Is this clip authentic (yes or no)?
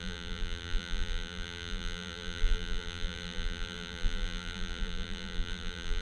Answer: no